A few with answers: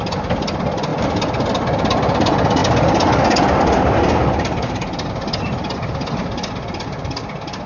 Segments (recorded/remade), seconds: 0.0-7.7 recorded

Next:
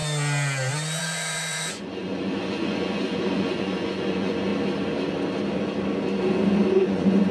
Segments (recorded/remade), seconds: 0.0-1.0 recorded; 1.0-4.5 remade; 4.5-6.8 recorded; 6.8-7.3 remade

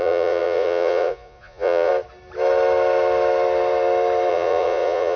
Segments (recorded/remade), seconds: 0.0-1.9 remade; 1.9-4.3 recorded; 4.3-5.2 remade

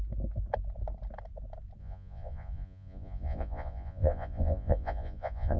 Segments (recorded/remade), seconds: 0.0-1.8 recorded; 1.8-5.6 remade

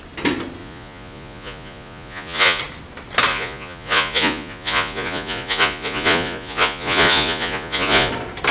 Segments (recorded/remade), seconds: 0.0-0.6 recorded; 0.6-2.6 remade; 2.6-3.3 recorded; 3.3-8.1 remade; 8.1-8.5 recorded

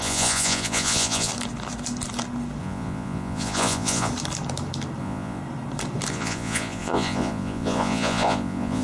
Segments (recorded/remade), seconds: 0.0-1.3 remade; 1.3-2.6 recorded; 2.6-4.1 remade; 4.1-5.0 recorded; 5.0-5.4 remade; 5.4-6.1 recorded; 6.1-8.8 remade

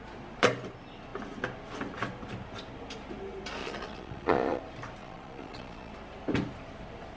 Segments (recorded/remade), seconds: 0.0-3.6 recorded; 3.6-4.6 remade; 4.6-5.0 recorded; 5.0-5.9 remade; 5.9-7.2 recorded